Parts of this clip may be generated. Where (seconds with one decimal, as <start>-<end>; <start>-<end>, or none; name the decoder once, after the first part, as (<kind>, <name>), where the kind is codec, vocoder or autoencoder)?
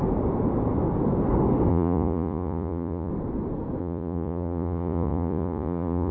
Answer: 1.7-3.1 (vocoder, Vocos); 3.8-6.1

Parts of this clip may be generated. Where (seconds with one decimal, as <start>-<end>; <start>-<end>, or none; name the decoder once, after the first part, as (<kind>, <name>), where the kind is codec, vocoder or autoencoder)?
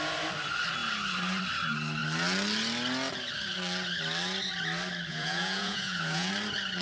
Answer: 5.1-6.3 (vocoder, Vocos)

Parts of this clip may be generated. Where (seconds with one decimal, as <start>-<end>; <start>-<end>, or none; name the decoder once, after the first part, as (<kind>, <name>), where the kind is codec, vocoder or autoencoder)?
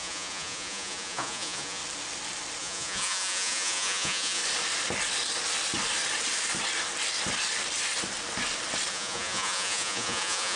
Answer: 0.0-1.8 (vocoder, Vocos); 2.6-4.4; 8.9-10.6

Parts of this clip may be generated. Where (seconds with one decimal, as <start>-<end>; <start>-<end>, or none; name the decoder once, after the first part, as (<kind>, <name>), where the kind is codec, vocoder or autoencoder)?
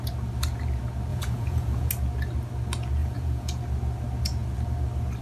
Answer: 1.1-1.9 (vocoder, Vocos); 3.0-3.6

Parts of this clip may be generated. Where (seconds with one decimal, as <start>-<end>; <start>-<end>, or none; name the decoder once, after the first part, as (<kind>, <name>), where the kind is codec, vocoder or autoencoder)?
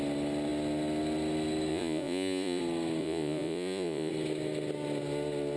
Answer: 1.7-2.6 (vocoder, Vocos); 3.0-4.1